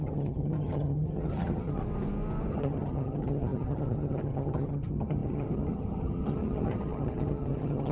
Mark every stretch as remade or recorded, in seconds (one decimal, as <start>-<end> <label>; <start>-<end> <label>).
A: 0.0-1.8 remade; 1.8-2.5 recorded; 2.5-7.9 remade